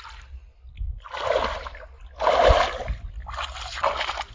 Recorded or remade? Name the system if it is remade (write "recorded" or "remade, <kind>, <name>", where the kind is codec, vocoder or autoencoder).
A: recorded